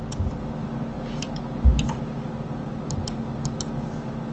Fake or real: real